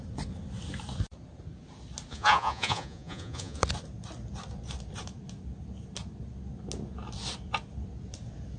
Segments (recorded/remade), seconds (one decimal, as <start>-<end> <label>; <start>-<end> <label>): 0.0-2.1 recorded; 2.1-3.6 remade; 3.6-8.6 recorded